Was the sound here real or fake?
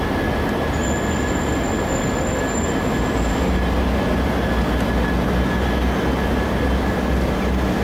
real